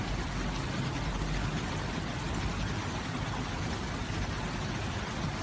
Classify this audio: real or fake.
real